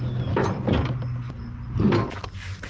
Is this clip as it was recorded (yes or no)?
yes